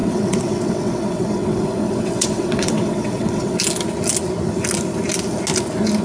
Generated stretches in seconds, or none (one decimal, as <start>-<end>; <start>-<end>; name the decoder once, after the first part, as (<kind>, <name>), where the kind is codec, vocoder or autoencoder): 0.0-3.6 (vocoder, WaveNeXt)

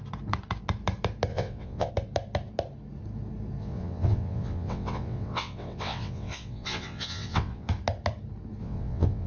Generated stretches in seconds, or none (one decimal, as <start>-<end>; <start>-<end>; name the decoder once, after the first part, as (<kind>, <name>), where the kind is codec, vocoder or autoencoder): 1.3-1.9 (vocoder, WaveNeXt); 3.6-7.7; 8.6-9.3

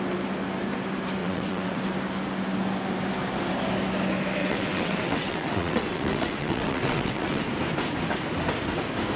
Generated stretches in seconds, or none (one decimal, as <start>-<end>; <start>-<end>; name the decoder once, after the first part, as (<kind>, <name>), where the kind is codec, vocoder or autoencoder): 1.2-1.8 (vocoder, WaveNeXt); 4.4-7.4